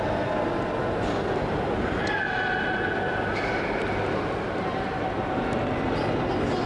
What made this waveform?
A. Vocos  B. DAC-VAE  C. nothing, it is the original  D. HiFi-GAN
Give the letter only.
C